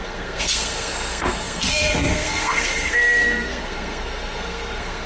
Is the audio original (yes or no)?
no